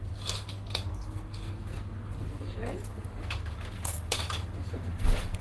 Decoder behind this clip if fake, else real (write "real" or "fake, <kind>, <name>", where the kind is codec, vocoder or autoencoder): fake, codec, SNAC